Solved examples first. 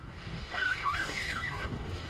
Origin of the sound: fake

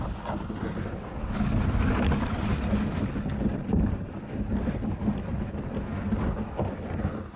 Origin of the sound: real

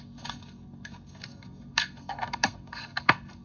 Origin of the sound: fake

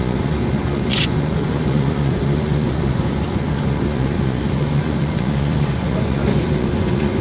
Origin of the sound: fake